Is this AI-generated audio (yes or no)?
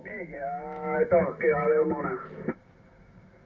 yes